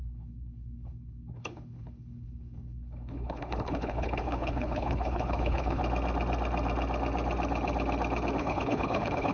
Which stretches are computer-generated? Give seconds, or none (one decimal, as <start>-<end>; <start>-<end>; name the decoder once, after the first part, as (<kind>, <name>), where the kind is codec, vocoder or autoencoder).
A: 0.0-5.8 (codec, HILCodec); 8.4-9.3